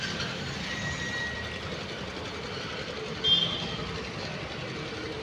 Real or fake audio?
real